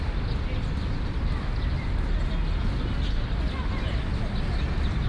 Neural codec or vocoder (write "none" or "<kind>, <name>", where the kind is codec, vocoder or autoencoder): none